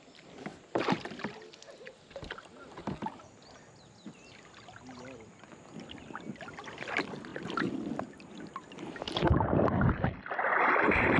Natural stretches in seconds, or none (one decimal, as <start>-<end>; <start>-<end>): 0.0-11.2